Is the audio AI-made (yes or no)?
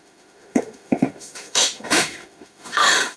yes